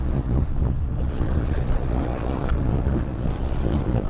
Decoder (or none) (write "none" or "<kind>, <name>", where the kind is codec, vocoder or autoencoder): vocoder, Vocos